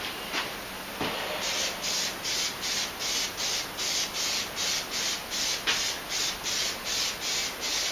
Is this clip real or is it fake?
real